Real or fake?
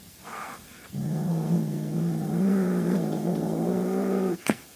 fake